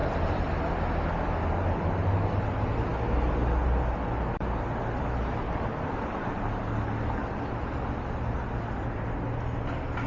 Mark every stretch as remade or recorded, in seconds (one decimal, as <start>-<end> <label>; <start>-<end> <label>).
0.0-0.5 remade; 0.5-10.1 recorded